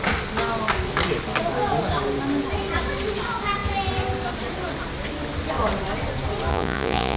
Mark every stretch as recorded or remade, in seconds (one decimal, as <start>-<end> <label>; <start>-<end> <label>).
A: 0.0-6.5 recorded; 6.5-7.2 remade